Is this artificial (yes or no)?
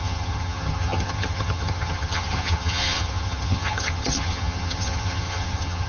yes